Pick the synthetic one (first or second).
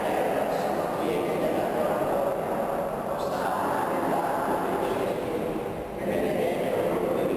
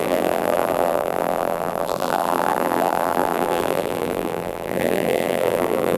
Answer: second